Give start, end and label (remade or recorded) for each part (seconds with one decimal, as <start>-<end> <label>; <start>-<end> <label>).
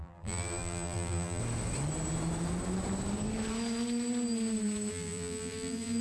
0.0-1.4 remade; 1.4-4.9 recorded; 4.9-6.0 remade